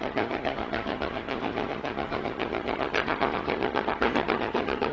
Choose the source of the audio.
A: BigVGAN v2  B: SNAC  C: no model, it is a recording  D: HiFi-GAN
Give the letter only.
D